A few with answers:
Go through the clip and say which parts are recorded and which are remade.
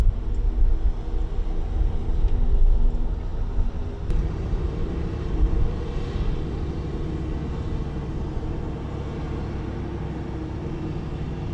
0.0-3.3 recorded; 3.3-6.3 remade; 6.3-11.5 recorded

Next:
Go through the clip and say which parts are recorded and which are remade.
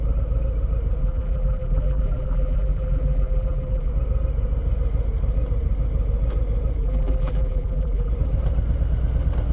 0.0-1.0 recorded; 1.0-3.9 remade; 3.9-6.8 recorded; 6.8-8.1 remade; 8.1-9.5 recorded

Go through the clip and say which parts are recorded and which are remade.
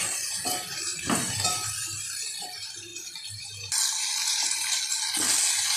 0.0-0.9 recorded; 0.9-1.5 remade; 1.5-2.9 recorded; 2.9-3.7 remade; 3.7-4.2 recorded; 4.2-4.8 remade; 4.8-5.8 recorded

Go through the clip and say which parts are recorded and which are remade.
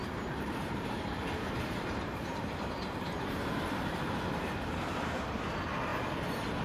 0.0-4.0 remade; 4.0-6.6 recorded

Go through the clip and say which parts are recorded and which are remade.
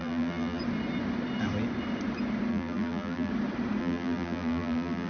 0.0-0.6 remade; 0.6-2.5 recorded; 2.5-3.3 remade; 3.3-3.8 recorded; 3.8-5.1 remade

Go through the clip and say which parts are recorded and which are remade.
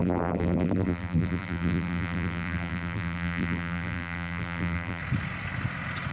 0.0-5.0 remade; 5.0-6.1 recorded